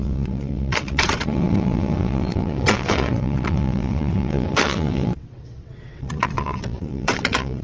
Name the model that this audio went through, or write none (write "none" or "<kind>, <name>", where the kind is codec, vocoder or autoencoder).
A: vocoder, WaveNeXt